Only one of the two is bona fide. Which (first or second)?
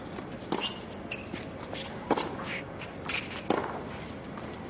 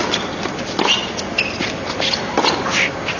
first